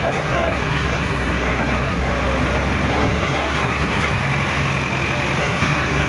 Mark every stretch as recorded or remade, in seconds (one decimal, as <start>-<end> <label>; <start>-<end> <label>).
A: 0.0-2.1 remade; 2.1-2.9 recorded; 2.9-4.2 remade; 4.2-5.4 recorded; 5.4-6.1 remade